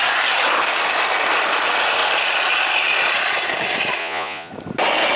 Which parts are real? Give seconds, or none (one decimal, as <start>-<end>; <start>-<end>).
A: 0.0-4.0; 4.5-5.2